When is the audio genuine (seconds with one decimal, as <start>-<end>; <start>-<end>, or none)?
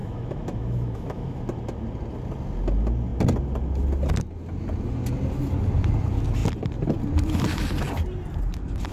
1.4-8.9